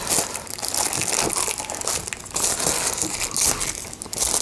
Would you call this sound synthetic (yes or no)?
no